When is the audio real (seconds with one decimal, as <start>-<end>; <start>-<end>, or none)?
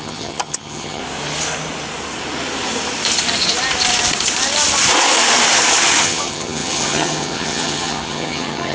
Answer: 1.0-6.0